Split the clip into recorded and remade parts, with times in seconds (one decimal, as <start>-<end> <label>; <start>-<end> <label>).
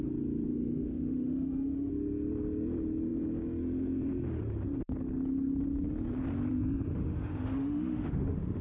0.0-0.5 recorded; 0.5-1.9 remade; 1.9-6.9 recorded; 6.9-8.6 remade